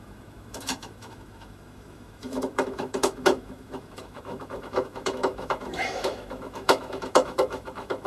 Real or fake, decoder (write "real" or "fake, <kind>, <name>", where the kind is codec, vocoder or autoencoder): fake, autoencoder, DAC-VAE